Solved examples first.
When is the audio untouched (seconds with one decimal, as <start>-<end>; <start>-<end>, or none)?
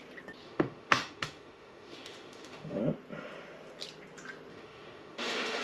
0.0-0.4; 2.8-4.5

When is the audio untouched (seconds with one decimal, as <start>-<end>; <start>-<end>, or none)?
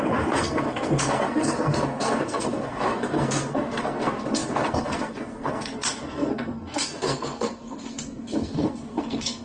none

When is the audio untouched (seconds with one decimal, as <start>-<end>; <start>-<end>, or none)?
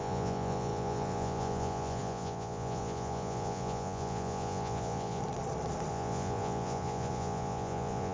5.2-5.9